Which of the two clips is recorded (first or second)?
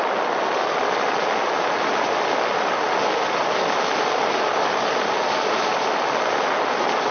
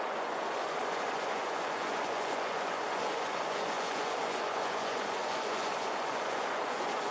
first